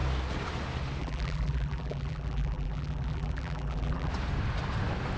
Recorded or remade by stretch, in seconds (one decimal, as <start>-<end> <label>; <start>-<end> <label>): 0.0-1.0 recorded; 1.0-4.1 remade; 4.1-5.2 recorded